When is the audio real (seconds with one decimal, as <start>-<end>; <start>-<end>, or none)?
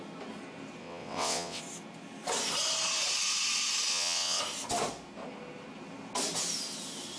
0.0-0.8; 1.6-3.9; 4.4-7.2